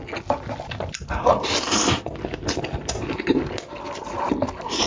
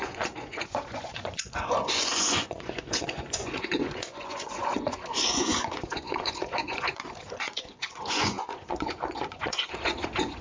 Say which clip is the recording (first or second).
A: first